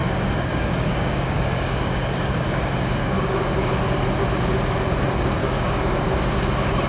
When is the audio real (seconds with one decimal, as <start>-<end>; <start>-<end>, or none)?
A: 3.7-5.4; 6.0-6.9